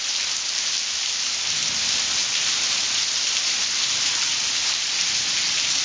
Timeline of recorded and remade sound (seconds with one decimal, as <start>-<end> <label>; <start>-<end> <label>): 0.0-5.8 recorded